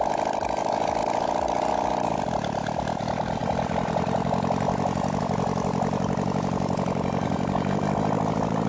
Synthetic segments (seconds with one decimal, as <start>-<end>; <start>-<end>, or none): none